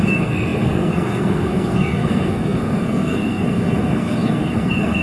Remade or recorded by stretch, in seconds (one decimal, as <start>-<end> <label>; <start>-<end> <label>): 0.0-5.0 remade

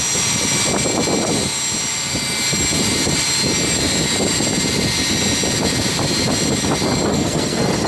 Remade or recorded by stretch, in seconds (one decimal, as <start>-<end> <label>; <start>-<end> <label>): 0.0-7.1 recorded; 7.1-7.9 remade

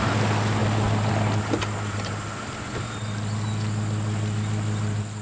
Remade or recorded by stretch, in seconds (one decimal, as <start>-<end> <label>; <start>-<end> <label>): 0.0-5.2 recorded

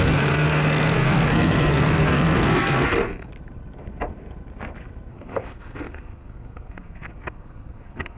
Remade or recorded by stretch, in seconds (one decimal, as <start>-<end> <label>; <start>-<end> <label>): 0.0-3.3 remade; 3.3-5.1 recorded; 5.1-8.2 remade

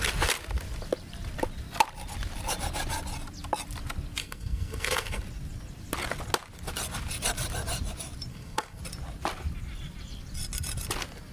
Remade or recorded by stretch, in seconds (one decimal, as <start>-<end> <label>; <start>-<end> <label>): 0.0-4.2 recorded; 4.2-5.2 remade; 5.2-8.3 recorded; 8.3-8.8 remade; 8.8-11.3 recorded

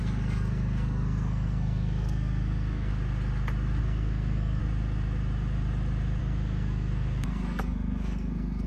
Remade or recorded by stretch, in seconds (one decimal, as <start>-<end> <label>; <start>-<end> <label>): 0.0-2.9 remade; 2.9-3.8 recorded; 3.8-4.6 remade; 4.6-6.2 recorded; 6.2-8.7 remade